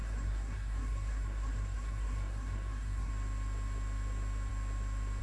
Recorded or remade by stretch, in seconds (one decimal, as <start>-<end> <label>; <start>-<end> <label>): 0.0-3.1 remade; 3.1-5.2 recorded